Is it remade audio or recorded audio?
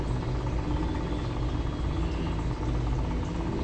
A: recorded